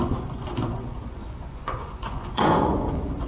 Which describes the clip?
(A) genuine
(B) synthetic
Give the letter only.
B